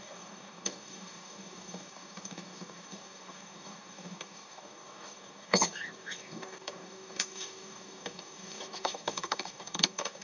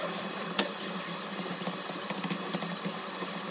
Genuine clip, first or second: second